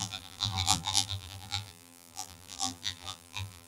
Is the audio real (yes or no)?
no